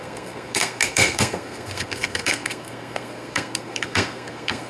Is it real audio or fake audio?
fake